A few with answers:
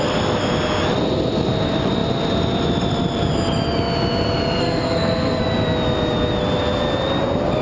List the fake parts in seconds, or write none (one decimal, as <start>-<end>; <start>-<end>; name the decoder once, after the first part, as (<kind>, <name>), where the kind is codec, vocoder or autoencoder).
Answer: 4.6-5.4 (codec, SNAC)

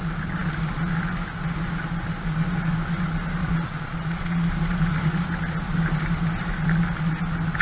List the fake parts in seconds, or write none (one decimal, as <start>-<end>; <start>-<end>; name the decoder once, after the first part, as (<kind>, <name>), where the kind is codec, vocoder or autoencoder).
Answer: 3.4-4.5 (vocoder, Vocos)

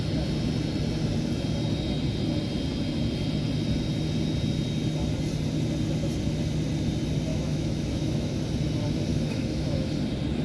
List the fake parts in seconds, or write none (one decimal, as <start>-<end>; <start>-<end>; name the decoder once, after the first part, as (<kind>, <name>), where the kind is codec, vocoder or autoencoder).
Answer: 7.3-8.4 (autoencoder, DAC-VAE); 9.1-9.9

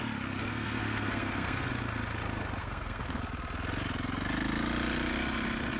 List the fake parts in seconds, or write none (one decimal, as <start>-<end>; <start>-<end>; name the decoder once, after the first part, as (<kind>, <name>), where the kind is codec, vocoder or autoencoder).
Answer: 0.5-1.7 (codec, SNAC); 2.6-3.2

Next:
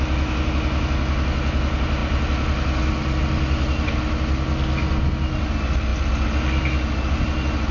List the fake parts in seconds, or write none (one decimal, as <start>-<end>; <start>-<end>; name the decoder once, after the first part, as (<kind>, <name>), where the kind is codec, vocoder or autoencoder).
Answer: none

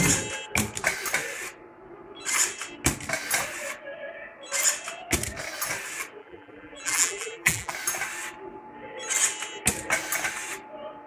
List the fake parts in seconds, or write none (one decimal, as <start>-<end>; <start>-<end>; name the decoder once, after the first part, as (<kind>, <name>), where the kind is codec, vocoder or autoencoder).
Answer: 6.2-7.7 (vocoder, BigVGAN v2)

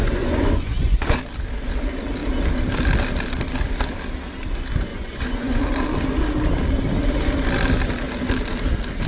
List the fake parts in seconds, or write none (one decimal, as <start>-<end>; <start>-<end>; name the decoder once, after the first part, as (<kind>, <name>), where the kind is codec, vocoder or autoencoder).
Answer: 0.0-1.2 (vocoder, Vocos); 4.9-5.6

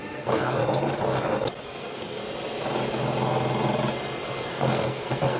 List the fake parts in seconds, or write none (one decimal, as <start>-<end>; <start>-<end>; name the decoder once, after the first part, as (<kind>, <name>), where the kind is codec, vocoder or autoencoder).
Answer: 0.0-0.6 (codec, SNAC); 1.6-2.2; 4.5-5.4